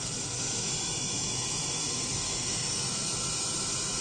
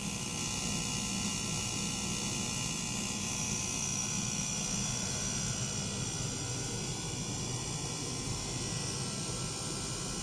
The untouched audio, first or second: second